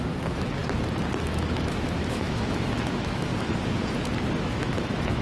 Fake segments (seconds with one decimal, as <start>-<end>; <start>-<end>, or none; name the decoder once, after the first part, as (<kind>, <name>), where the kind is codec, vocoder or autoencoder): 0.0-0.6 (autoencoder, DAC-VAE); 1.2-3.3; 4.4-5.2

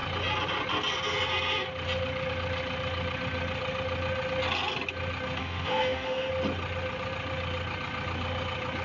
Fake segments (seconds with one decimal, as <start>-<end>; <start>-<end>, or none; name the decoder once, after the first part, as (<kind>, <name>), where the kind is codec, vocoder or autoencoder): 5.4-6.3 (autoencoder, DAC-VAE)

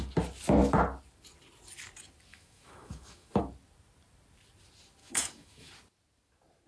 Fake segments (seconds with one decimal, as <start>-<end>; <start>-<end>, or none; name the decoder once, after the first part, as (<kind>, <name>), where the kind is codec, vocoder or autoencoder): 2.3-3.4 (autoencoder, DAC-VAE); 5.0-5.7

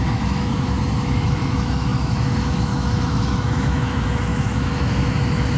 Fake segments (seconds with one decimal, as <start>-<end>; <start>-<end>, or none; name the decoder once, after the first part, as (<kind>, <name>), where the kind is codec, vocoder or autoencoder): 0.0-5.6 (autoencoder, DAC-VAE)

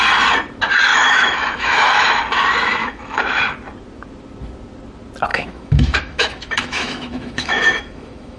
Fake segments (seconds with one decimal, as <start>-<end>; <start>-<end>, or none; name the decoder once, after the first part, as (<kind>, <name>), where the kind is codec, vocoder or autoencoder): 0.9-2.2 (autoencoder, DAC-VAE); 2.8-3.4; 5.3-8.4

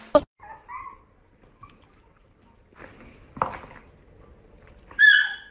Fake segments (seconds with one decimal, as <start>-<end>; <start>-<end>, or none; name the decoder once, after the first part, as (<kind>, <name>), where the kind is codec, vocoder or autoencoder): none

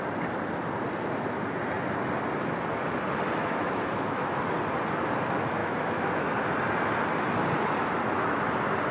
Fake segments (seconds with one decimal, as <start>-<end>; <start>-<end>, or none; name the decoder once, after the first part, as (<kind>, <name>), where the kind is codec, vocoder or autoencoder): 3.4-4.4 (autoencoder, DAC-VAE); 5.6-6.1

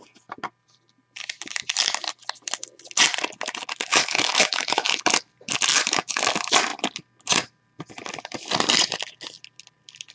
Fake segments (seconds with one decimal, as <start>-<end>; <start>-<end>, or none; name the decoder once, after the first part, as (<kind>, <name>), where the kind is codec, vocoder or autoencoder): 3.9-5.0 (autoencoder, DAC-VAE); 5.7-6.2